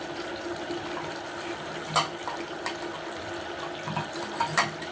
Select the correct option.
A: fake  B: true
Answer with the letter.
B